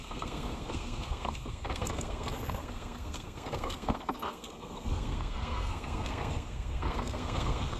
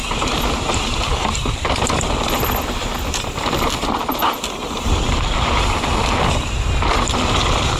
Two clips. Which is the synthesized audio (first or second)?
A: first